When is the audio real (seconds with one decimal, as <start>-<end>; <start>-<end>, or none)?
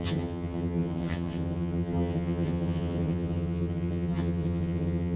none